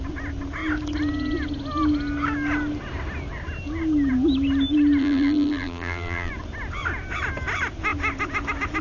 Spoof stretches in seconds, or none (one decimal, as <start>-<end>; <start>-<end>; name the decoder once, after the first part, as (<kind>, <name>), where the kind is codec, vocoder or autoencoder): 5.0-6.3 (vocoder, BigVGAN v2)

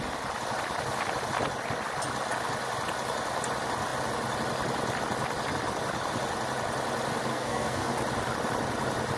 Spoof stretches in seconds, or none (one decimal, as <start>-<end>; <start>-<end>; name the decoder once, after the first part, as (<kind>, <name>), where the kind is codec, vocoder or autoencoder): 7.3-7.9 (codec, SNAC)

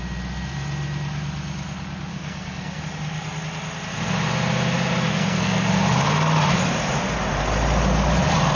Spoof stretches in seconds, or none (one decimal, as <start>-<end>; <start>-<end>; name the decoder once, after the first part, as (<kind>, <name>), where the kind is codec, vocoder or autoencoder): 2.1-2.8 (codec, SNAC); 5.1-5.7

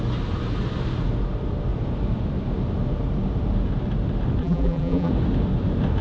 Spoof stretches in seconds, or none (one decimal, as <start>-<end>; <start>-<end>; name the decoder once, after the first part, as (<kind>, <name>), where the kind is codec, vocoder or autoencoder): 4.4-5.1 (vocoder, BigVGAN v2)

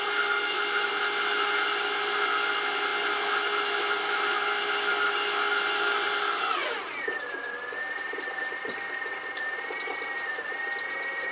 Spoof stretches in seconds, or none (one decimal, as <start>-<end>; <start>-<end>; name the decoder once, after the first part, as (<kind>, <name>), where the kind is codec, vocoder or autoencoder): none